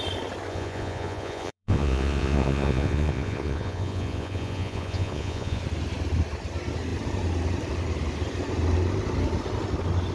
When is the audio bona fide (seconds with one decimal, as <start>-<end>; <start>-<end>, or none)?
0.0-0.5; 5.6-10.1